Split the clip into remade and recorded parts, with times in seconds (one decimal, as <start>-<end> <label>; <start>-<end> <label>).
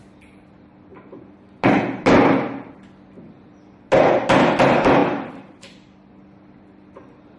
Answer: 0.0-5.0 recorded; 5.0-6.1 remade; 6.1-7.4 recorded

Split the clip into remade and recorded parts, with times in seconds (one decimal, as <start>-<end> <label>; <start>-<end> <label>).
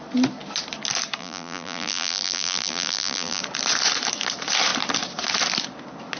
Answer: 0.0-1.2 recorded; 1.2-3.4 remade; 3.4-6.2 recorded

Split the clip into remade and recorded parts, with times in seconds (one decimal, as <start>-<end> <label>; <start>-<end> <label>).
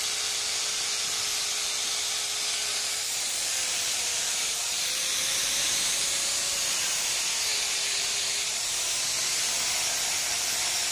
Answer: 0.0-2.7 recorded; 2.7-5.6 remade; 5.6-6.5 recorded; 6.5-7.2 remade; 7.2-10.9 recorded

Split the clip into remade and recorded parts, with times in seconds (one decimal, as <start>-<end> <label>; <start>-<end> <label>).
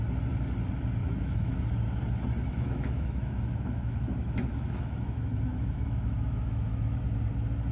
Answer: 0.0-1.0 recorded; 1.0-1.6 remade; 1.6-2.5 recorded; 2.5-7.0 remade; 7.0-7.7 recorded